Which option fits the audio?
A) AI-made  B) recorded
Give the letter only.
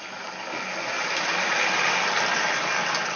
B